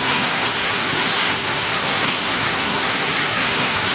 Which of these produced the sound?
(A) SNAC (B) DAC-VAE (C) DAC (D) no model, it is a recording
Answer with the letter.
A